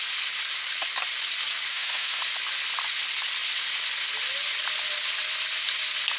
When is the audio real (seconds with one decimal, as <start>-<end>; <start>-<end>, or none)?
0.0-1.7; 2.2-6.2